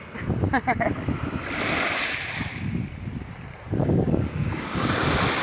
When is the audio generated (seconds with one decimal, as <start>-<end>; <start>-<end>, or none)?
3.8-4.9